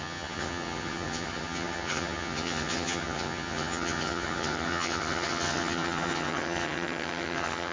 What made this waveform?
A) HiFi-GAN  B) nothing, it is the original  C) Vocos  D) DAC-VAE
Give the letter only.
A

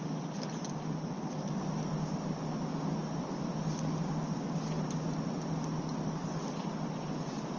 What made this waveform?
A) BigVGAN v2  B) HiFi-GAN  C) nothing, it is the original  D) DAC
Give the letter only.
C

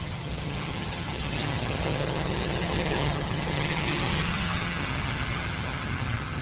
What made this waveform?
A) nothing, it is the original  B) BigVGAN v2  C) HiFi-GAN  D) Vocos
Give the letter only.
C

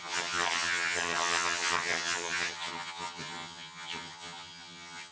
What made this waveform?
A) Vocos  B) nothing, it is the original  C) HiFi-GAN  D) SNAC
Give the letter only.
C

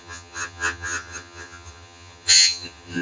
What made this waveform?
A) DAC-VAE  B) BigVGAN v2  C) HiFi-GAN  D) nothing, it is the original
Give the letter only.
C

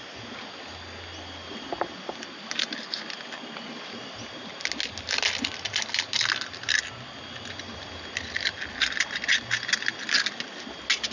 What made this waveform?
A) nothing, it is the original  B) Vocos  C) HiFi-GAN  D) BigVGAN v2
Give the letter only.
A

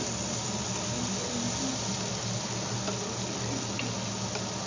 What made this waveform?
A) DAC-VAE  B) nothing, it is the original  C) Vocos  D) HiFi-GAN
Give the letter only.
B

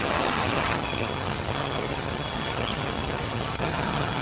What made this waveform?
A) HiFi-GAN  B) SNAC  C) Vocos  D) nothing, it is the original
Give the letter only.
A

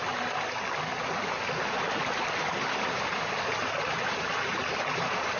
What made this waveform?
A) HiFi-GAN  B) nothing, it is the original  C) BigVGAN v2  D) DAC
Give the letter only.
B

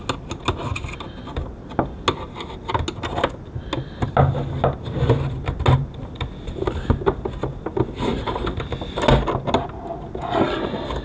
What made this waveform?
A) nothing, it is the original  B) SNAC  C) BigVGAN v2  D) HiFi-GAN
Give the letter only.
A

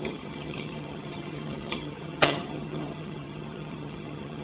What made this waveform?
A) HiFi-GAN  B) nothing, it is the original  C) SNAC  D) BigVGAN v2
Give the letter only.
A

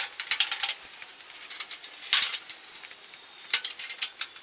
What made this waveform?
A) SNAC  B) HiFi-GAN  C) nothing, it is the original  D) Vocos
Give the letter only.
C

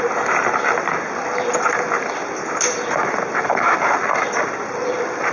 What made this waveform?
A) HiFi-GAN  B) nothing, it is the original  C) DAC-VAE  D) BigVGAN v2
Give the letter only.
B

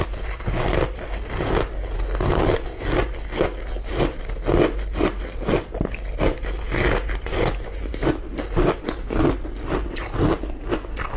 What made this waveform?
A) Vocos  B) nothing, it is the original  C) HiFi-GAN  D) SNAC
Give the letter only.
B